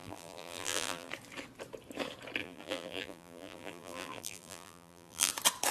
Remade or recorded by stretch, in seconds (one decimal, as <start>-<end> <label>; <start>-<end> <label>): 0.0-1.1 remade; 1.1-2.4 recorded; 2.4-5.3 remade; 5.3-5.7 recorded

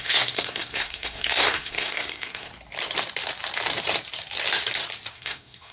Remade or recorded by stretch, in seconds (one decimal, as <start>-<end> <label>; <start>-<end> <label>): 0.0-2.5 remade; 2.5-5.1 recorded; 5.1-5.7 remade

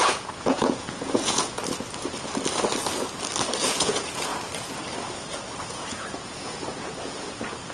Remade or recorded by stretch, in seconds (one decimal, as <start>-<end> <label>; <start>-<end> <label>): 0.0-1.6 remade; 1.6-3.6 recorded; 3.6-4.3 remade; 4.3-5.7 recorded; 5.7-7.7 remade

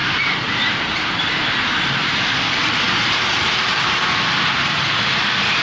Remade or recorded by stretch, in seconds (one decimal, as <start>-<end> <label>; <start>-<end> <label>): 0.0-2.2 remade; 2.2-2.6 recorded; 2.6-4.8 remade; 4.8-5.6 recorded

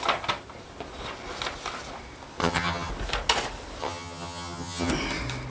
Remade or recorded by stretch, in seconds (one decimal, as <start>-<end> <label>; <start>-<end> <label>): 0.0-2.4 recorded; 2.4-2.9 remade; 2.9-3.8 recorded; 3.8-4.9 remade; 4.9-5.5 recorded

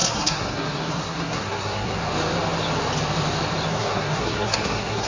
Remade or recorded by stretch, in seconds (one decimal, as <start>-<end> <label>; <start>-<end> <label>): 0.0-2.0 remade; 2.0-3.7 recorded; 3.7-5.1 remade

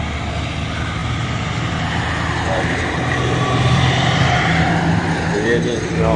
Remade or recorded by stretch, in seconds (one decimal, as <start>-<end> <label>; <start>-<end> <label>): 0.0-1.0 recorded; 1.0-4.7 remade; 4.7-6.2 recorded

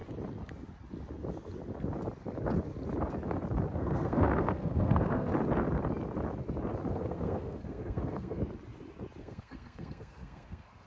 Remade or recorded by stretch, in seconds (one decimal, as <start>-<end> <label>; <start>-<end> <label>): 0.0-3.7 recorded; 3.7-5.3 remade; 5.3-6.9 recorded; 6.9-8.4 remade; 8.4-9.2 recorded; 9.2-10.9 remade